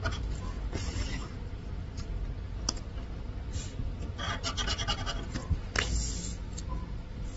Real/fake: real